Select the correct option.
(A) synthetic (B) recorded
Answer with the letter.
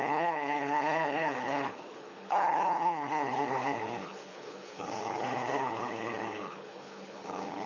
A